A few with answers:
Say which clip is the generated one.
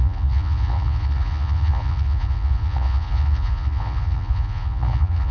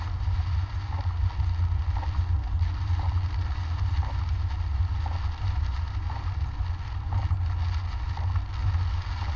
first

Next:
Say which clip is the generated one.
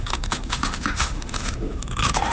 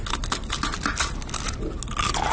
first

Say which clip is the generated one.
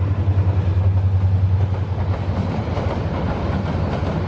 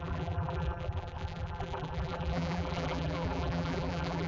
second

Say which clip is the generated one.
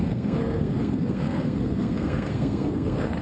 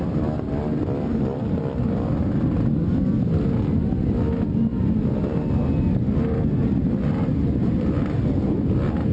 first